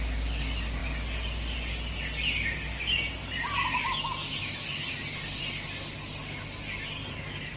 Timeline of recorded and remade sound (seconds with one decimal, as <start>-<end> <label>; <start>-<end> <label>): 0.0-7.6 recorded